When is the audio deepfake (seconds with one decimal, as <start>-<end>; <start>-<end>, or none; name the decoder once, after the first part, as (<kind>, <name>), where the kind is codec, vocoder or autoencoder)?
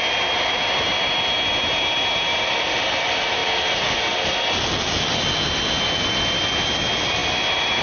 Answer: none